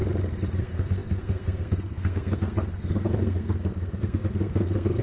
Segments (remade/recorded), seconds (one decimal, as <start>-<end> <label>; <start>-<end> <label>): 0.0-0.6 recorded; 0.6-5.0 remade